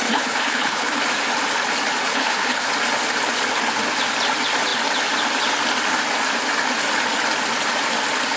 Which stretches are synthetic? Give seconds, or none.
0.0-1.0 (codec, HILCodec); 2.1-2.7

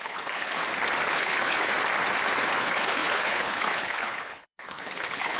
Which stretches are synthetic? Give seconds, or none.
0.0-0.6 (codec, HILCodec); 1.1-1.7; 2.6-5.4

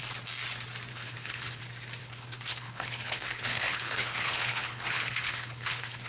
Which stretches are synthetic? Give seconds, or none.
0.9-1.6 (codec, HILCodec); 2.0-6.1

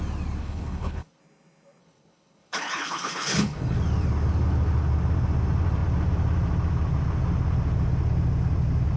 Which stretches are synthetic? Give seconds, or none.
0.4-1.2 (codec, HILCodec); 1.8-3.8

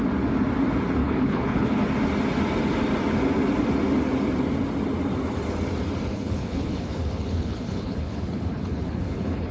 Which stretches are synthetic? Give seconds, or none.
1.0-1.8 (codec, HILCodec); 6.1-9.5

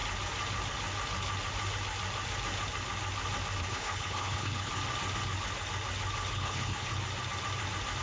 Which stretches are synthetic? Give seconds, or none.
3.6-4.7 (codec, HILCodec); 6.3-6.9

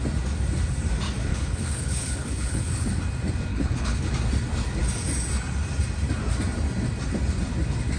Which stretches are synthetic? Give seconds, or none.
1.3-3.0 (codec, HILCodec); 3.5-4.1

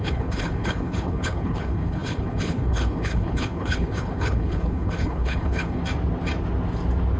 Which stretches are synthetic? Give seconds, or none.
0.0-5.8 (codec, HILCodec)